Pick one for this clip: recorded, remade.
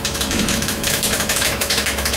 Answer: remade